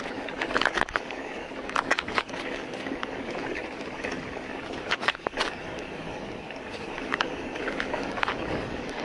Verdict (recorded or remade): remade